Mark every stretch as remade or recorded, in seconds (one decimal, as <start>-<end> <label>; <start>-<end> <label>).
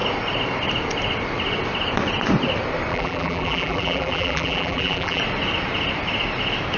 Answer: 0.0-2.9 recorded; 2.9-5.2 remade; 5.2-6.8 recorded